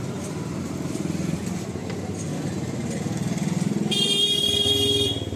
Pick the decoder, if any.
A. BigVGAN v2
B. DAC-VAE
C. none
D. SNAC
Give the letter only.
C